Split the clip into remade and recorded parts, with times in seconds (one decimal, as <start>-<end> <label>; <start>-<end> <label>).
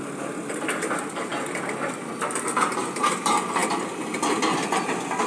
0.0-5.3 recorded